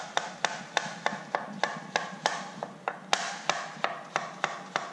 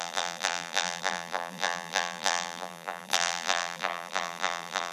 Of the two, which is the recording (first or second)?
first